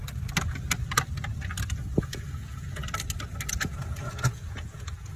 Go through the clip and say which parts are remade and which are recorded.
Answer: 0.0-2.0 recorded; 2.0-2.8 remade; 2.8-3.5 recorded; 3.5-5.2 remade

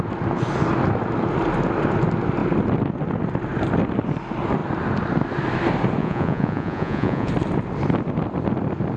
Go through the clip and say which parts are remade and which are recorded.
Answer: 0.0-6.0 recorded; 6.0-7.3 remade; 7.3-9.0 recorded

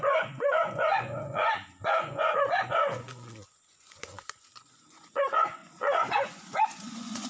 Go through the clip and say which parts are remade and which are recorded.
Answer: 0.0-7.3 remade

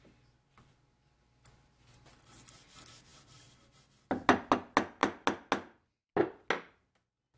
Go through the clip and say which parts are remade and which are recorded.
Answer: 0.0-7.4 recorded

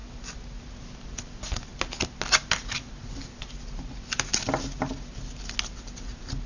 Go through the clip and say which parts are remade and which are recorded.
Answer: 0.0-6.5 recorded

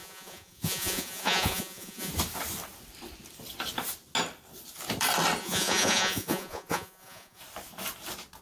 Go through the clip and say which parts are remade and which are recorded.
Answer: 0.0-2.1 remade; 2.1-5.4 recorded; 5.4-7.4 remade; 7.4-8.4 recorded